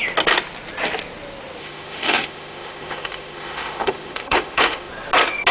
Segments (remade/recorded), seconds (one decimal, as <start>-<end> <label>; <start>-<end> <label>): 0.0-1.6 recorded; 1.6-4.9 remade; 4.9-5.5 recorded